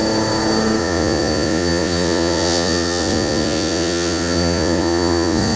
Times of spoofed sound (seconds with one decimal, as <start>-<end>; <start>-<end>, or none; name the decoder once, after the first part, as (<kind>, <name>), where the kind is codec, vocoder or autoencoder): 0.8-5.6 (vocoder, Vocos)